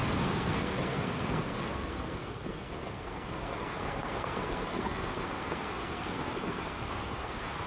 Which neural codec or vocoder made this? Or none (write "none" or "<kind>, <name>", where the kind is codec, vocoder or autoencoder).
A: codec, SNAC